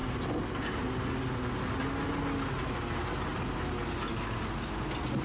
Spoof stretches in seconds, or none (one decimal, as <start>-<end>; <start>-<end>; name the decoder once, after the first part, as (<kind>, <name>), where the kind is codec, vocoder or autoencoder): none